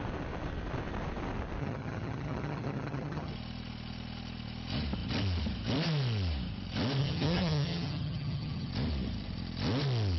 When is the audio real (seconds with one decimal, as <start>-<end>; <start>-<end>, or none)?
0.0-1.6; 3.3-7.0; 8.7-10.2